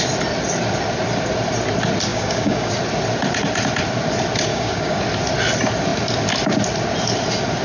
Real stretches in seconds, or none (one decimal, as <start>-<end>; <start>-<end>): 0.0-2.1; 2.7-4.5; 5.0-7.6